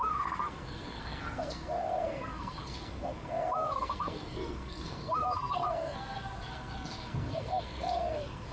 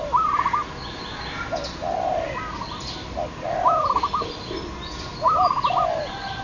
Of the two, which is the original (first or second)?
second